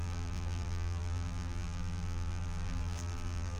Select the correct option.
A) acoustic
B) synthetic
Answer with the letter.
B